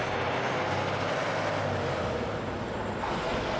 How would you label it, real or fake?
real